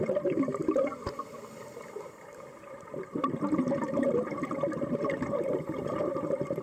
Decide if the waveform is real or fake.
fake